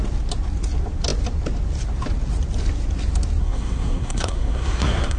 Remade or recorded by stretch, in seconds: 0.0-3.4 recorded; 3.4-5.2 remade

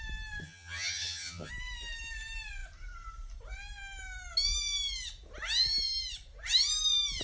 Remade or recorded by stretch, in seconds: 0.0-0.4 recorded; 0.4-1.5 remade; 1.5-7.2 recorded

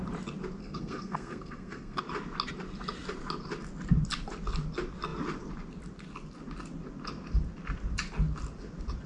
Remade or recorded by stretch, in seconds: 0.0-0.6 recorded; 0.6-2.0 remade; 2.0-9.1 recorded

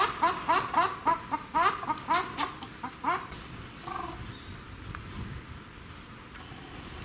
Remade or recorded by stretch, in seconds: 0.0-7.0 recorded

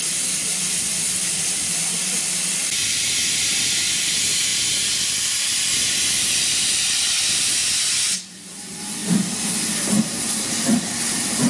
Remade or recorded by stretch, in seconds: 0.0-11.5 recorded

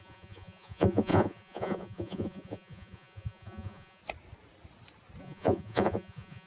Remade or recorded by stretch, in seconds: 0.0-4.0 remade; 4.0-5.2 recorded; 5.2-6.5 remade

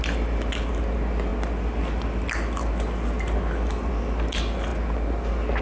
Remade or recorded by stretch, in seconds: 0.0-5.6 recorded

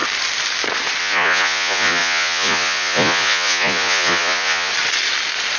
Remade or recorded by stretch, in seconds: 0.0-1.0 recorded; 1.0-4.7 remade; 4.7-5.6 recorded